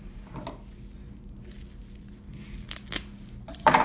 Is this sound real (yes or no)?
yes